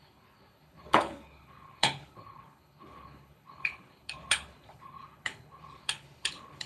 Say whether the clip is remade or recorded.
remade